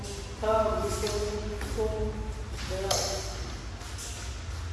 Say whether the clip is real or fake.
real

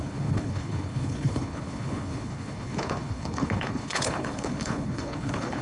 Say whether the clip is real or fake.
fake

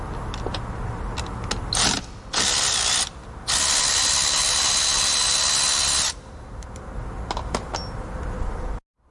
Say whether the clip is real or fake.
real